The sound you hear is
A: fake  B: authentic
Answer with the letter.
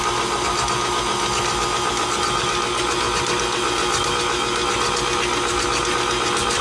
B